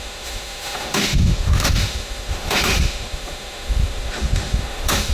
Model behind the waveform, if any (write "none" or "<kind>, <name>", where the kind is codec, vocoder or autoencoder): autoencoder, DAC-VAE